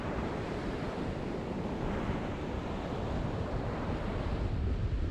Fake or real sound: fake